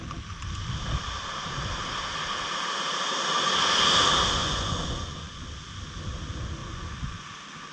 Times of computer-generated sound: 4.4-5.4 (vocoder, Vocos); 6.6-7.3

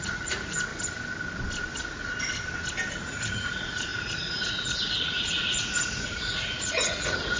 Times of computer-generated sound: 0.0-0.7 (vocoder, Vocos); 3.0-7.4

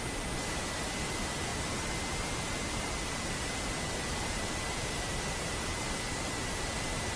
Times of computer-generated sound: none

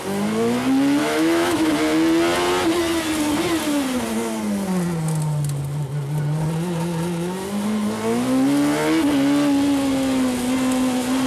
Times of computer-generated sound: 1.0-1.7 (autoencoder, DAC-VAE)

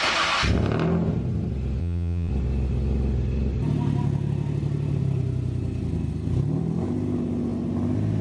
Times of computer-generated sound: 1.8-2.3 (vocoder, Vocos)

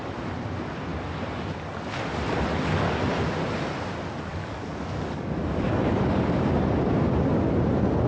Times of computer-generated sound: 4.3-6.4 (codec, DAC)

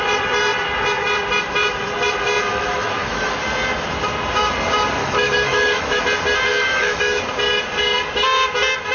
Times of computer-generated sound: 2.5-3.3 (autoencoder, DAC-VAE); 5.0-6.0; 6.5-7.2